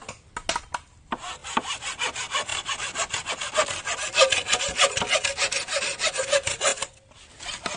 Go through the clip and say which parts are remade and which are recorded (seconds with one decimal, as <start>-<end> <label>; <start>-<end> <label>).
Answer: 0.0-7.8 recorded